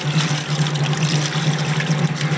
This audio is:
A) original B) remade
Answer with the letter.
A